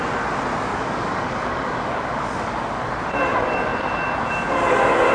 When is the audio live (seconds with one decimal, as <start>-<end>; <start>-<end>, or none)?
0.0-0.7; 2.9-5.1